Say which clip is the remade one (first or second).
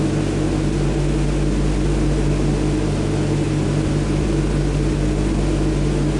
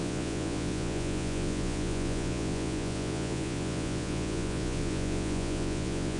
second